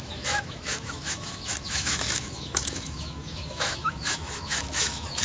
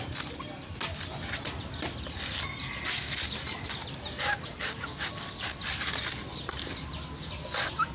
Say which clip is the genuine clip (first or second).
second